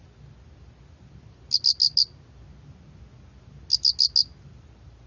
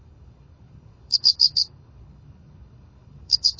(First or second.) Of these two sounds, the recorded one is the first